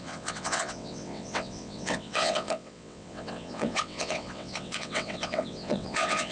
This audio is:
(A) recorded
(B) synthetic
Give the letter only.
B